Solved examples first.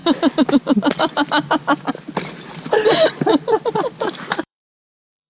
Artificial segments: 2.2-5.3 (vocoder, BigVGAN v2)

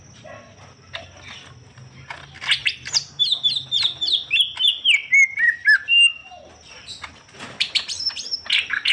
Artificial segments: 2.6-3.2 (vocoder, BigVGAN v2); 6.2-8.9

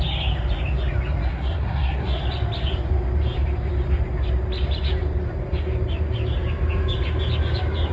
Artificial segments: 1.3-2.2 (codec, SNAC)

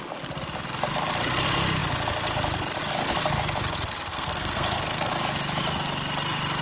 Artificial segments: 4.1-5.1 (codec, SNAC)

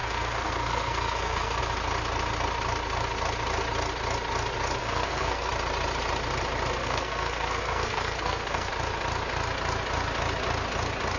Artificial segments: 0.0-1.6 (codec, SNAC); 4.8-5.5; 6.8-8.7

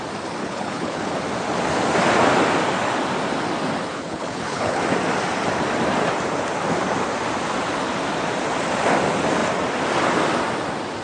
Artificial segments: 0.4-1.1 (codec, HILCodec); 3.9-4.8

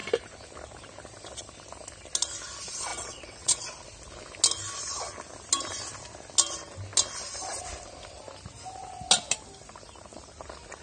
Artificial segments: 2.9-3.6 (vocoder, WaveNeXt)